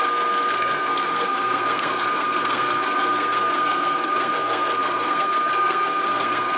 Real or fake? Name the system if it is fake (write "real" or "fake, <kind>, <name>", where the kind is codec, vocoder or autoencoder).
fake, codec, SNAC